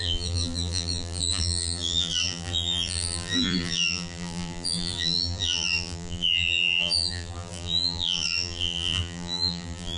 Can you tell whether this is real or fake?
fake